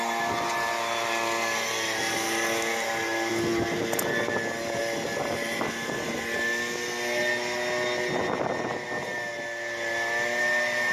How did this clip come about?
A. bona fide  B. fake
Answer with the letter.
A